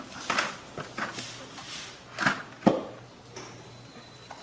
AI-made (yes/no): no